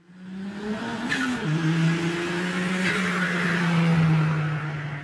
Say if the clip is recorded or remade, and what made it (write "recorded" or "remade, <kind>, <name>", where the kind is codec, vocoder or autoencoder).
recorded